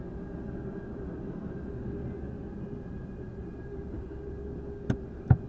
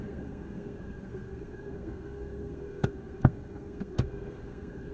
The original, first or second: first